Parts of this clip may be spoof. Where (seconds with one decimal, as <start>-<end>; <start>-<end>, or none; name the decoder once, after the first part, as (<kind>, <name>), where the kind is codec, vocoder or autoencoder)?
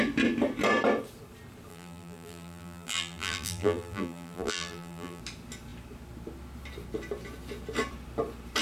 1.7-5.2 (vocoder, BigVGAN v2)